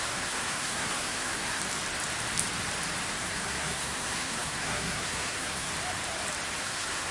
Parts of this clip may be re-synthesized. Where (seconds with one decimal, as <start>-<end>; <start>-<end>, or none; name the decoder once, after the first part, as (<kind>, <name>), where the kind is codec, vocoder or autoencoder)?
0.0-1.6 (codec, SNAC); 3.2-5.7; 6.6-7.1